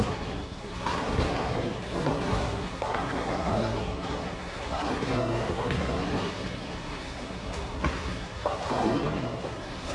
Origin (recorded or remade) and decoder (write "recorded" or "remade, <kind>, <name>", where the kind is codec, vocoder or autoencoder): remade, codec, SNAC